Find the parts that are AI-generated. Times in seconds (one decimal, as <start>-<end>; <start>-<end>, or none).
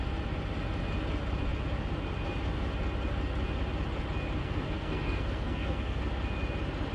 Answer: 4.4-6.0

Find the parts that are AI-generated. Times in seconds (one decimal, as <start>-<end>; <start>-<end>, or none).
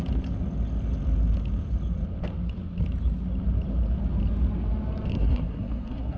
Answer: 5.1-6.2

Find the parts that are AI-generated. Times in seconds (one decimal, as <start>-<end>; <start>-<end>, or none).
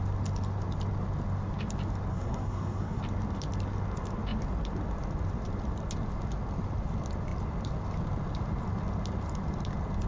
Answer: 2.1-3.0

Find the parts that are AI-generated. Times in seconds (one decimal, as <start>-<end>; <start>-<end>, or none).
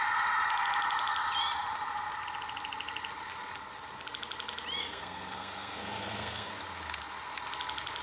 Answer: 4.8-6.5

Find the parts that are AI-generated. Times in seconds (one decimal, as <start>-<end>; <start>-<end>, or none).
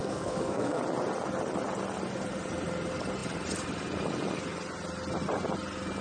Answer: 0.0-0.8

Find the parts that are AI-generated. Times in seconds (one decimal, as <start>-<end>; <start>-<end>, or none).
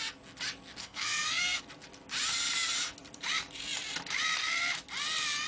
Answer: 0.8-1.6